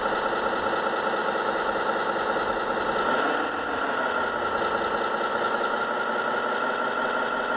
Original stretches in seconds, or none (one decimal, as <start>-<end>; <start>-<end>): 0.0-1.2; 2.8-5.3; 5.8-7.6